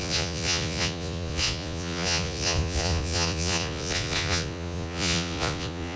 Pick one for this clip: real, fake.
fake